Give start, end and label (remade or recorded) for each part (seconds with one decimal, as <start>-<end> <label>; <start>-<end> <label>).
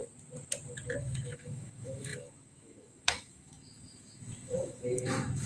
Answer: 0.0-1.0 recorded; 1.0-5.5 remade